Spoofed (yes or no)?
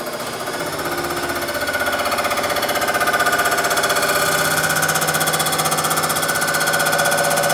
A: no